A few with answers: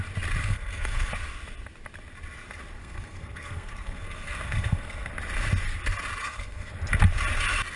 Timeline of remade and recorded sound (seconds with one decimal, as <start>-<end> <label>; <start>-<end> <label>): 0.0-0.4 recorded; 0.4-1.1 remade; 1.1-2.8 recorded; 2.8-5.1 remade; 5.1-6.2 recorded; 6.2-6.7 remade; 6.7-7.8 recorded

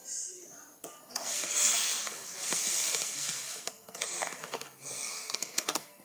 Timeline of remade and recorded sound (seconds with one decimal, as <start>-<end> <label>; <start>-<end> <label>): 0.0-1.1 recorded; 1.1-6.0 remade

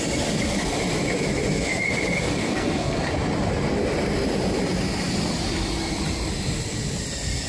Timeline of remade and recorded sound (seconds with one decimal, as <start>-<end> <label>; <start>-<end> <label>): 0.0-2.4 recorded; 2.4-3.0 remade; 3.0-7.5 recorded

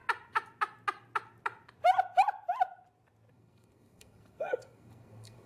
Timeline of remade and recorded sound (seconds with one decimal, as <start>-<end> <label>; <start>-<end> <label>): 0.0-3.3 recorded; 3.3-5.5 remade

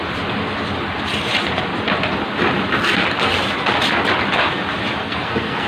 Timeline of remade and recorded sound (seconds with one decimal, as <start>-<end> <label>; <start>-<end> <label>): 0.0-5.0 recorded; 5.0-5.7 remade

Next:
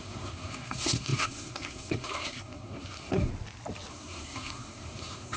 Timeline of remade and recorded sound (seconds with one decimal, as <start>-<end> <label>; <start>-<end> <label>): 0.0-3.3 remade; 3.3-3.9 recorded; 3.9-5.4 remade

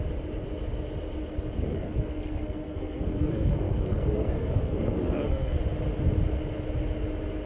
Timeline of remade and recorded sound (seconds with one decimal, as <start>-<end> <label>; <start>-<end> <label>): 0.0-1.6 recorded; 1.6-5.6 remade; 5.6-7.5 recorded